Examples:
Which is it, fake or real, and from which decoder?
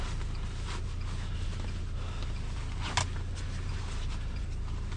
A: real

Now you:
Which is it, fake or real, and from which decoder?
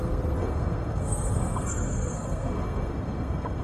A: fake, codec, SNAC